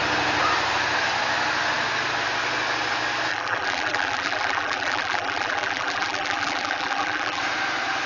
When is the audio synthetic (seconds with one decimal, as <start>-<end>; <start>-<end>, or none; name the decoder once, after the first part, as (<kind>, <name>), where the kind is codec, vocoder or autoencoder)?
3.3-7.4 (vocoder, BigVGAN v2)